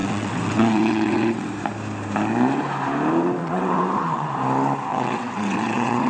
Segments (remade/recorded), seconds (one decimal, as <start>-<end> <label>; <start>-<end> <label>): 0.0-1.5 remade; 1.5-3.4 recorded; 3.4-4.3 remade; 4.3-4.9 recorded; 4.9-6.1 remade